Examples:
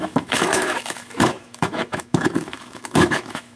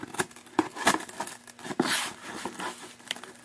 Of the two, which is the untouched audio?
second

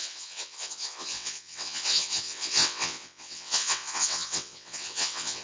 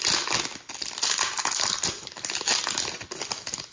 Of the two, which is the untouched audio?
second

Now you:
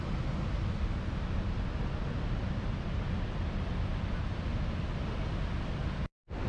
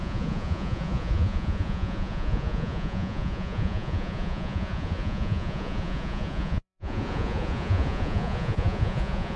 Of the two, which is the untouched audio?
first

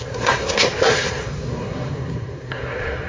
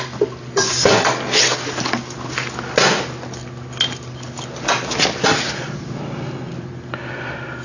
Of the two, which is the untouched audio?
second